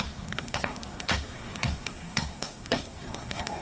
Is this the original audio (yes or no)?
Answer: no